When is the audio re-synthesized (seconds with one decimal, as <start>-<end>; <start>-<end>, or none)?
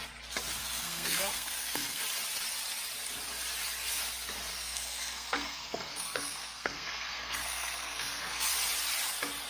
0.6-2.0; 4.5-8.5